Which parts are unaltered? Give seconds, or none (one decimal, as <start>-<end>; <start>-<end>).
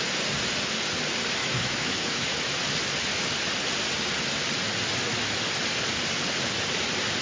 0.0-1.4; 2.6-7.2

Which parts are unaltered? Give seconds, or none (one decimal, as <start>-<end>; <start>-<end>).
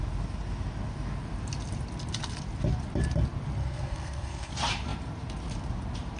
0.0-3.6; 4.5-6.2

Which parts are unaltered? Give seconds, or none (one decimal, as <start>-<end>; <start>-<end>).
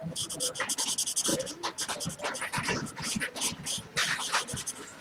0.0-1.3; 2.2-5.0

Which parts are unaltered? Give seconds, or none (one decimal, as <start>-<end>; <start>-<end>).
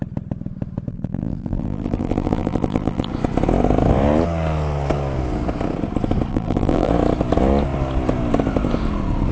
0.0-0.9; 3.1-6.3; 6.9-9.3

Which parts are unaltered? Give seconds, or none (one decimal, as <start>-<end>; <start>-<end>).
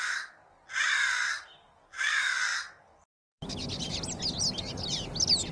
0.0-5.5